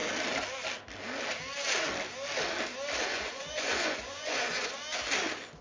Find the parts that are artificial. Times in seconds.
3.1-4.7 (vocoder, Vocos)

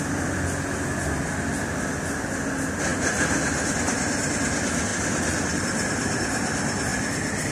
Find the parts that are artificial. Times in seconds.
none

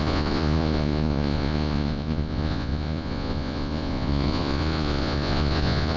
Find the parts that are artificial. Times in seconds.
0.0-6.0 (vocoder, Vocos)

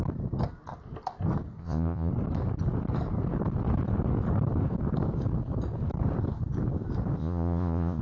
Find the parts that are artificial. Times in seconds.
1.6-2.1 (vocoder, Vocos); 7.2-8.0